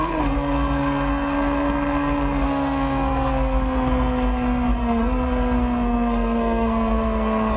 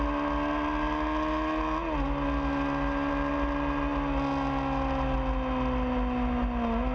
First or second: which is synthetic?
first